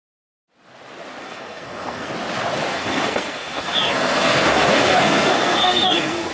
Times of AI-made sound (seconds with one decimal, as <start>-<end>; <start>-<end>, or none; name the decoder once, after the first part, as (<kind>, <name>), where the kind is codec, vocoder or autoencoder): 1.2-2.1 (codec, SNAC); 2.7-6.3